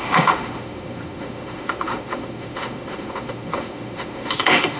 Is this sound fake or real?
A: fake